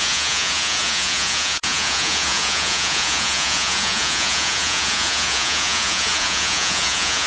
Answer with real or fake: fake